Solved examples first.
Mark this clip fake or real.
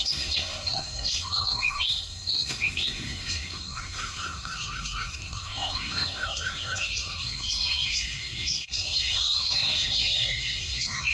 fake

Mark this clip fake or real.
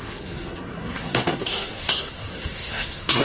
fake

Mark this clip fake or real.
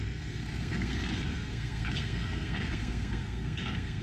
fake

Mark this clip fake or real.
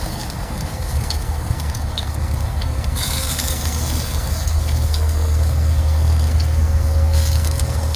fake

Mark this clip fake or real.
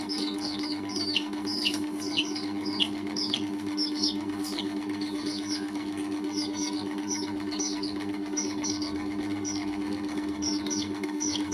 fake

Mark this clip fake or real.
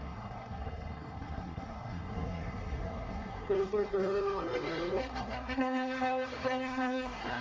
fake